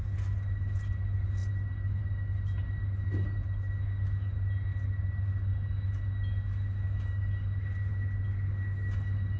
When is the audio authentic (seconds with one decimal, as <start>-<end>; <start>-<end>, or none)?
0.0-9.4